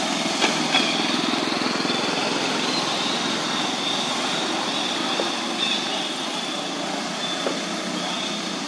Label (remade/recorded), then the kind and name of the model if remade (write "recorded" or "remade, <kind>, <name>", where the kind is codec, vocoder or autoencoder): recorded